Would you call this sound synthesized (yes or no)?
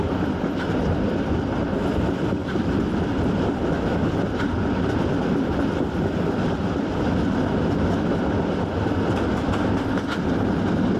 no